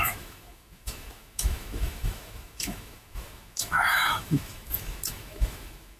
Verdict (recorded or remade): remade